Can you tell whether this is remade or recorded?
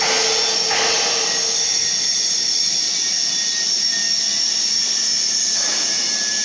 recorded